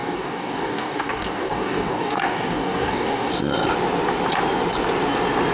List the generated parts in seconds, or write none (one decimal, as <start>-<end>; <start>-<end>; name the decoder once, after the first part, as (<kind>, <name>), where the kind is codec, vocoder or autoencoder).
0.0-3.3 (codec, DAC)